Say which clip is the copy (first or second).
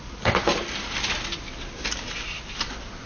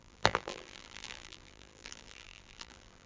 second